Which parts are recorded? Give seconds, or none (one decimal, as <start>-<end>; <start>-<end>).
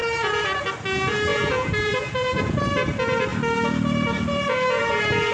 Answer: 0.0-1.3; 2.6-5.3